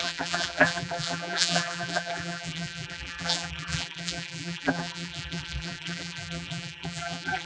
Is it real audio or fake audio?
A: fake